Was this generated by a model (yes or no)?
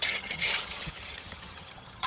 yes